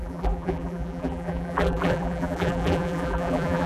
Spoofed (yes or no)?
yes